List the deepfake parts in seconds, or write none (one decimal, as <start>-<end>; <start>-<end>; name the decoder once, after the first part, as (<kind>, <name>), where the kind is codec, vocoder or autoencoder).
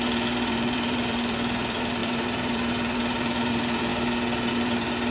0.0-3.9 (vocoder, BigVGAN v2); 4.5-5.1